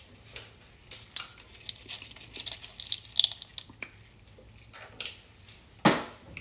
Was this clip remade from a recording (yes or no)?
no